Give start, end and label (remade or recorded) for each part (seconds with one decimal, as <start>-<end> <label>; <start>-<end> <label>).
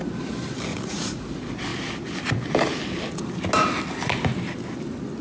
0.0-0.7 recorded; 0.7-1.2 remade; 1.2-5.2 recorded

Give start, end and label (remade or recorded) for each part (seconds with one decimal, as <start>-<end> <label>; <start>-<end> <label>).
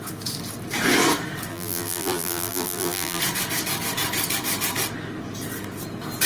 0.0-1.5 recorded; 1.5-3.2 remade; 3.2-6.3 recorded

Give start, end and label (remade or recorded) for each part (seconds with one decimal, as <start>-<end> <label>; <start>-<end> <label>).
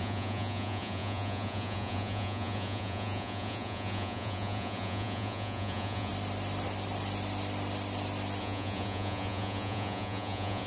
0.0-6.1 remade; 6.1-8.4 recorded; 8.4-10.7 remade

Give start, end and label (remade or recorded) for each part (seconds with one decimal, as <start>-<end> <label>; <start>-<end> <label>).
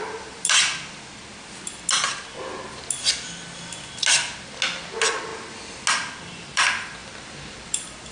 0.0-0.7 remade; 0.7-4.7 recorded; 4.7-5.3 remade; 5.3-6.3 recorded; 6.3-8.1 remade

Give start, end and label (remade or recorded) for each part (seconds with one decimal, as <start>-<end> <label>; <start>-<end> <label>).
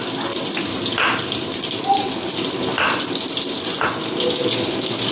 0.0-5.1 recorded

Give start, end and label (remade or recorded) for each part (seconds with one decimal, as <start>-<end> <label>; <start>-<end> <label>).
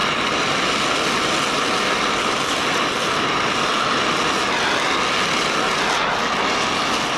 0.0-7.2 recorded